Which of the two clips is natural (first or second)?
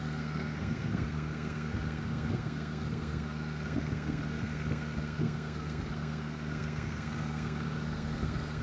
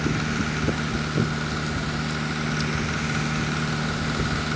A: second